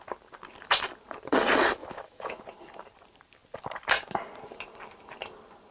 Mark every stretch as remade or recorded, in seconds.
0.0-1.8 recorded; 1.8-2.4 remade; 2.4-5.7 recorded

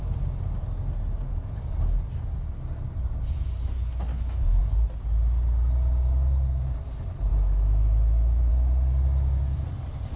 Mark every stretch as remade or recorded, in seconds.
0.0-4.1 recorded; 4.1-4.6 remade; 4.6-7.3 recorded; 7.3-8.5 remade; 8.5-10.2 recorded

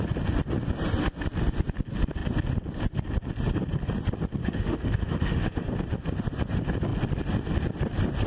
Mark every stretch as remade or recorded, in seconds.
0.0-4.4 recorded; 4.4-5.7 remade; 5.7-8.3 recorded

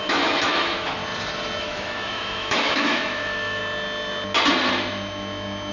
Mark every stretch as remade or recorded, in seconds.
0.0-1.0 remade; 1.0-1.6 recorded; 1.6-3.6 remade; 3.6-5.7 recorded

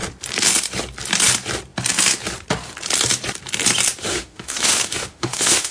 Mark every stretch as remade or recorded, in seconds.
0.0-4.1 recorded; 4.1-5.7 remade

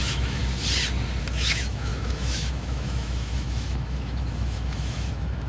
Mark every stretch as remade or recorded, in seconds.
0.0-0.4 remade; 0.4-1.2 recorded; 1.2-5.5 remade

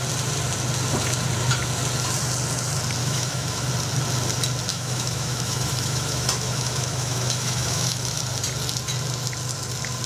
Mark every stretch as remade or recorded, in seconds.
0.0-3.0 recorded; 3.0-3.7 remade; 3.7-4.7 recorded; 4.7-8.2 remade; 8.2-10.1 recorded